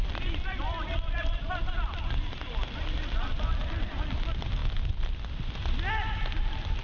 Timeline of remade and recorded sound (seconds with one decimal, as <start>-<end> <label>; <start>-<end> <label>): 0.0-4.6 remade; 4.6-5.9 recorded; 5.9-6.8 remade